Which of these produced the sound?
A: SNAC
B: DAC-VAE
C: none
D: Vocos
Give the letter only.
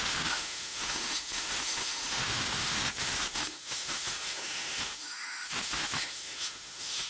B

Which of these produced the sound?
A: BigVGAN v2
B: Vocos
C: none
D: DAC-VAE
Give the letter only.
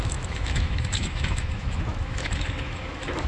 D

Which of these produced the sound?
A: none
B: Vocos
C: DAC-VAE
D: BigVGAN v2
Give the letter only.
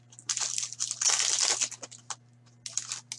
A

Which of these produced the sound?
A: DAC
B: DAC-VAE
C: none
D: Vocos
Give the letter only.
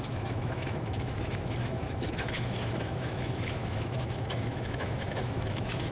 B